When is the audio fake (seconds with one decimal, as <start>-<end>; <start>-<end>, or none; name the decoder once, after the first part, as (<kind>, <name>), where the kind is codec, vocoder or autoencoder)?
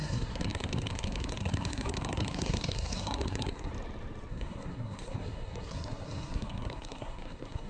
0.0-3.7 (codec, SNAC); 4.3-7.7